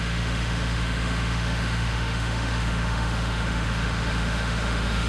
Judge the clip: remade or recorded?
remade